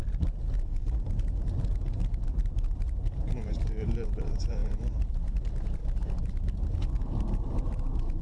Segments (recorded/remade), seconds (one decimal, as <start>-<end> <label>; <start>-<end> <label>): 0.0-5.8 remade; 5.8-6.8 recorded; 6.8-8.2 remade